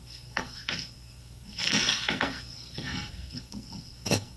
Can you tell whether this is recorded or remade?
remade